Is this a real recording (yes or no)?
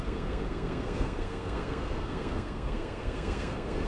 no